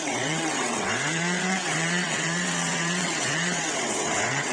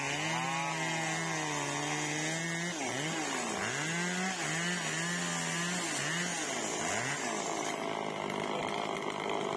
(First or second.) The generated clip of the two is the first